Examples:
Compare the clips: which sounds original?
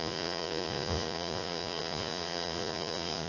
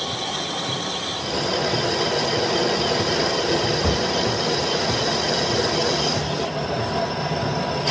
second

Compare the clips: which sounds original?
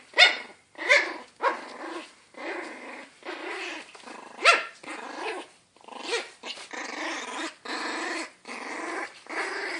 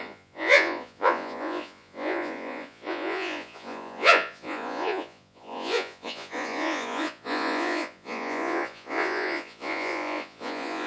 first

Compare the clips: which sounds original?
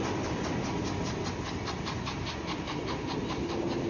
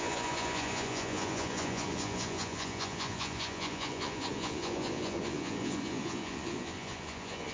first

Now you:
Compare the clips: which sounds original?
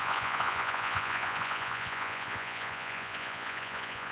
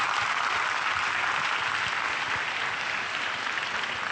second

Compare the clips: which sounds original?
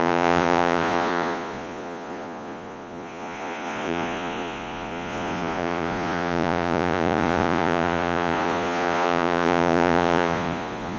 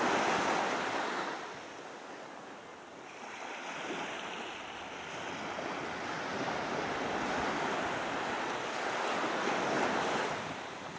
second